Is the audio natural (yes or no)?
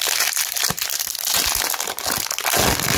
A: yes